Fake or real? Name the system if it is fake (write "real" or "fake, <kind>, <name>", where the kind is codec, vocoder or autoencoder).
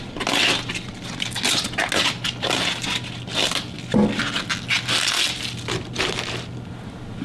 real